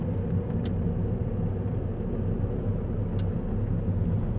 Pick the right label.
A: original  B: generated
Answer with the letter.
A